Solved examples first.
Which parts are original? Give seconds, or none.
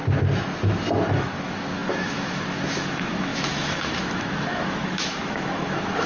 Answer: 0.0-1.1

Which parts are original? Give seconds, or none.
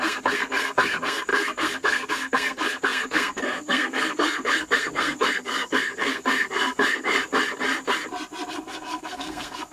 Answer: 7.2-8.5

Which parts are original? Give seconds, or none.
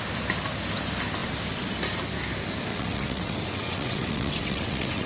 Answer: 0.0-2.7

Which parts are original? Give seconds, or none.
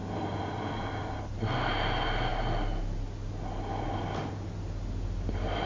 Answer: 0.0-5.7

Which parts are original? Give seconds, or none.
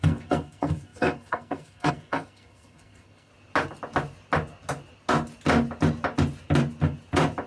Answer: 3.3-7.5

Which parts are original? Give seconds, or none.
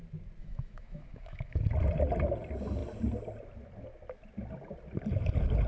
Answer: 0.0-0.4; 1.6-5.7